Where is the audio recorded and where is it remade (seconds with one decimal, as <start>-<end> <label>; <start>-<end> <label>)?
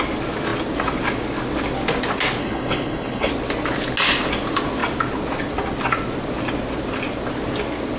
0.0-2.4 recorded; 2.4-3.3 remade; 3.3-8.0 recorded